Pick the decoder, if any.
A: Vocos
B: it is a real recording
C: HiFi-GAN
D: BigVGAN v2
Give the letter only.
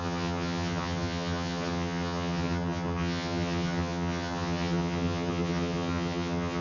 C